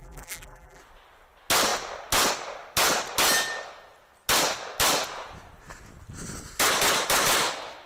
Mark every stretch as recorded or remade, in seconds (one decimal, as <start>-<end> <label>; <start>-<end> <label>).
0.0-0.8 remade; 0.8-7.9 recorded